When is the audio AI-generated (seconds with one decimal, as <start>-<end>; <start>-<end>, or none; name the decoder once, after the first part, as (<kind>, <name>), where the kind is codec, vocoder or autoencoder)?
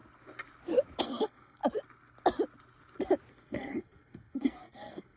1.0-1.6 (codec, SNAC); 3.3-5.2